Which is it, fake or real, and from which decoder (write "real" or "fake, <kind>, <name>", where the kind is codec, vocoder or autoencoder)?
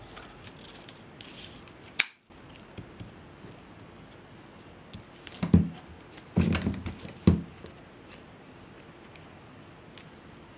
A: real